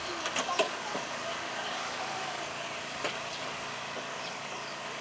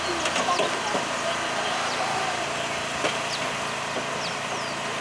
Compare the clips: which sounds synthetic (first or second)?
first